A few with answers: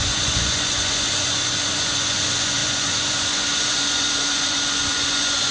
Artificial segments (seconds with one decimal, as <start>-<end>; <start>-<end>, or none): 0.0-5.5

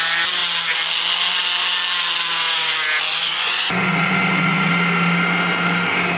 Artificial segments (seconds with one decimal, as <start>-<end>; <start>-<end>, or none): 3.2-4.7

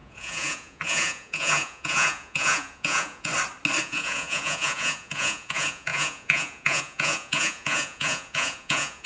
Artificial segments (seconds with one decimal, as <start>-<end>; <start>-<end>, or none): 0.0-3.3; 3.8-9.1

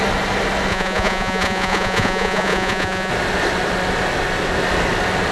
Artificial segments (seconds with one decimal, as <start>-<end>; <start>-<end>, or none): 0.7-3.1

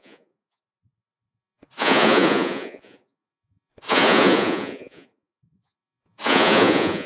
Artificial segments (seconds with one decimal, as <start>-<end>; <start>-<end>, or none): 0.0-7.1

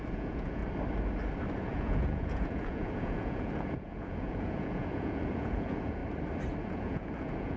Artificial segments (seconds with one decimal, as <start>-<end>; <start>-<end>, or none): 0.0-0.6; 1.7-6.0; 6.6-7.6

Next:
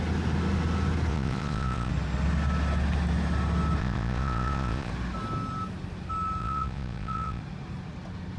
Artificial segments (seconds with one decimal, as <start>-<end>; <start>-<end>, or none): 1.1-1.9; 3.8-4.9; 6.4-7.4